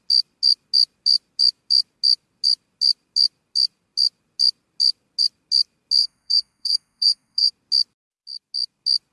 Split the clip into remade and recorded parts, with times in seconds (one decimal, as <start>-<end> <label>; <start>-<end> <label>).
0.0-6.0 recorded; 6.0-7.5 remade; 7.5-9.1 recorded